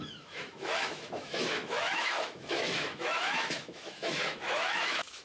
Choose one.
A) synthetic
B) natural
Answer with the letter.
A